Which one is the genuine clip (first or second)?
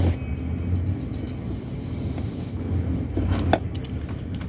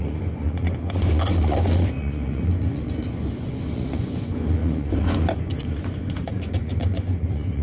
first